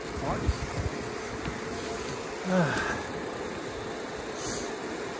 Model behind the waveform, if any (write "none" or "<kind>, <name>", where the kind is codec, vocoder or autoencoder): none